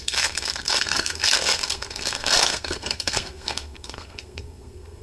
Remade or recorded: remade